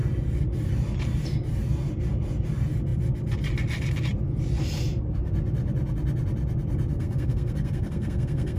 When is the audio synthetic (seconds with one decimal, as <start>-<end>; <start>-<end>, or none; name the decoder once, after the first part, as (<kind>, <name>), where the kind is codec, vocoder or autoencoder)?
6.9-8.6 (codec, SNAC)